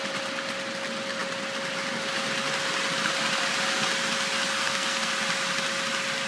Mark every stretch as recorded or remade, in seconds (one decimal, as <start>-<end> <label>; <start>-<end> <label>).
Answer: 0.0-4.6 recorded; 4.6-5.1 remade; 5.1-6.3 recorded